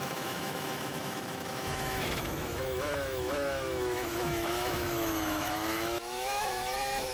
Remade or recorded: remade